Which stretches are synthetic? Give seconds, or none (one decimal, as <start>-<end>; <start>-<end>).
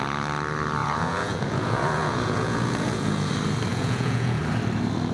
0.8-3.3; 3.7-4.4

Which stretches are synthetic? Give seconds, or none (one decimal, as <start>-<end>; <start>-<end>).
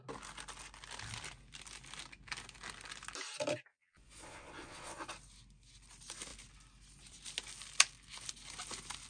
3.7-5.1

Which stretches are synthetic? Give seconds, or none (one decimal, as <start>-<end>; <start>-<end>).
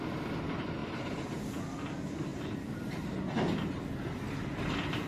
2.3-3.1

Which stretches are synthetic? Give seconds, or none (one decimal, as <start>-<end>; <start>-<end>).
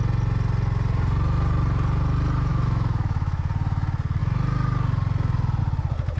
2.5-3.5